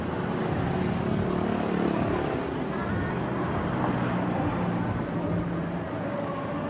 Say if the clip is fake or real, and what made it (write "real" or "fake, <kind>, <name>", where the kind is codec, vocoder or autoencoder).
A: real